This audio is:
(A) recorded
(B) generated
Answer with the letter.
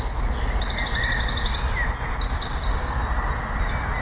A